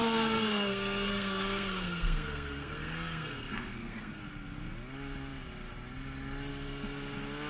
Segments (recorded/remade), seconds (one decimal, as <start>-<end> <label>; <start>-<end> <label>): 0.0-4.2 remade; 4.2-7.5 recorded